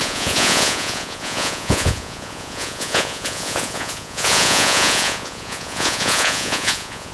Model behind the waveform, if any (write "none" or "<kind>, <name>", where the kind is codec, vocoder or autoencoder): vocoder, Vocos